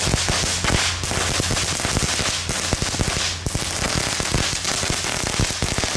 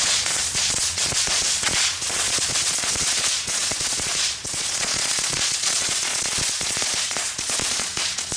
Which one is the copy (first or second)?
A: second